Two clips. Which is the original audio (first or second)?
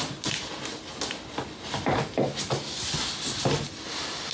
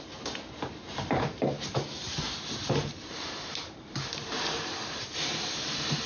first